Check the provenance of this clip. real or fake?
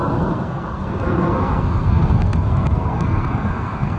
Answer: fake